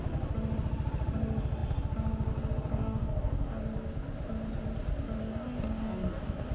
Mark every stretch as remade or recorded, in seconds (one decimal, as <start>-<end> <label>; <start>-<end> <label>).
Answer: 0.0-2.7 recorded; 2.7-3.6 remade; 3.6-5.2 recorded; 5.2-6.5 remade